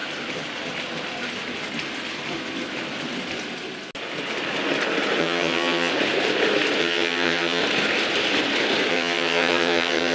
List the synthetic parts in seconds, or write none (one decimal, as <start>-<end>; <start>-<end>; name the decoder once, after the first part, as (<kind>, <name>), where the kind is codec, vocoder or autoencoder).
5.2-5.9 (vocoder, HiFi-GAN); 6.8-7.6; 8.9-10.1